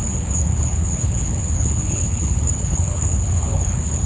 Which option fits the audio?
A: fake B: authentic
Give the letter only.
A